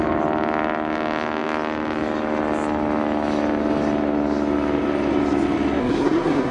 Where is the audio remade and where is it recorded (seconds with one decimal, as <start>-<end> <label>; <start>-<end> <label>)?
0.0-5.8 recorded; 5.8-6.5 remade